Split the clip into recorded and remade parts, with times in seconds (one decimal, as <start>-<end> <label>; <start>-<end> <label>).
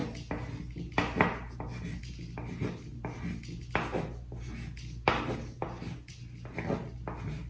0.0-7.5 recorded